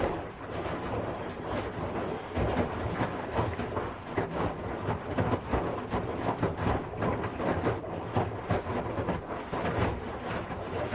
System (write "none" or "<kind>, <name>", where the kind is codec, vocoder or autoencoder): none